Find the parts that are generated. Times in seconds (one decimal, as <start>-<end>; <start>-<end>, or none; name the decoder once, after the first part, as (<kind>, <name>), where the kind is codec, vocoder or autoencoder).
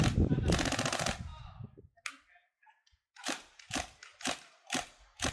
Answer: 2.4-5.3 (vocoder, BigVGAN v2)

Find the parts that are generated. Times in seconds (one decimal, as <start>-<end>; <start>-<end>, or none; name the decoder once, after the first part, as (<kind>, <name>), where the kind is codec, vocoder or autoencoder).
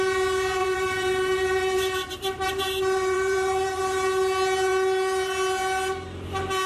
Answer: 0.6-3.8 (vocoder, BigVGAN v2)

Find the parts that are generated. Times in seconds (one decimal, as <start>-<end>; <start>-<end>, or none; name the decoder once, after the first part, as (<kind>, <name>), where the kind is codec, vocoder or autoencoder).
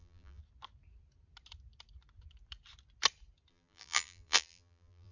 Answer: 0.0-0.4 (vocoder, BigVGAN v2); 3.5-5.1